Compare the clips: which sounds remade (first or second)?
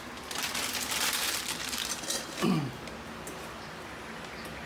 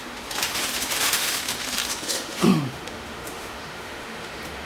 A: second